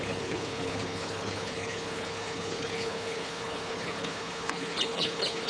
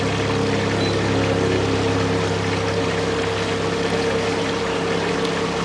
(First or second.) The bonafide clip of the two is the second